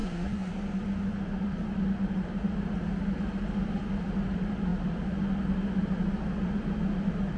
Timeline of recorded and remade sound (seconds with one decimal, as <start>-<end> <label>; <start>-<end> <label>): 0.0-0.5 remade; 0.5-7.4 recorded